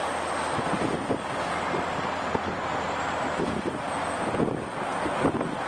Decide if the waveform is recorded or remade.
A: recorded